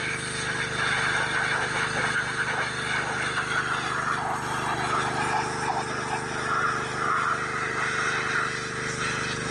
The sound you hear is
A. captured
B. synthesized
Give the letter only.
A